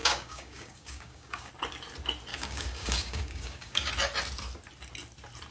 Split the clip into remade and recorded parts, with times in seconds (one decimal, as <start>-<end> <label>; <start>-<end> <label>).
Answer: 0.0-1.5 remade; 1.5-2.3 recorded; 2.3-3.9 remade; 3.9-5.5 recorded